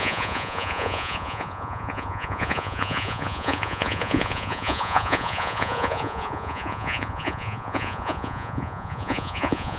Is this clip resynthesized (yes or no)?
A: yes